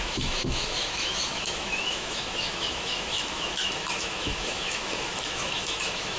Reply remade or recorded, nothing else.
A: remade